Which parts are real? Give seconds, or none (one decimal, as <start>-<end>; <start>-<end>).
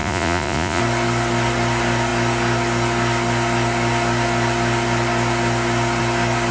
0.8-6.5